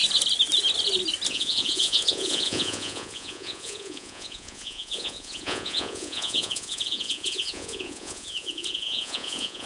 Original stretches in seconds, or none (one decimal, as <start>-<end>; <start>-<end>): 0.0-1.3